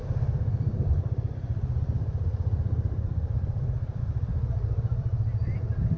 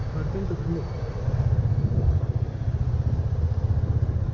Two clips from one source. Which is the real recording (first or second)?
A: second